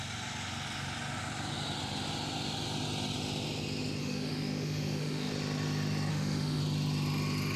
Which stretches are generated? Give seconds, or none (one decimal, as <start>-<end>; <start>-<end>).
4.0-5.3; 6.1-6.6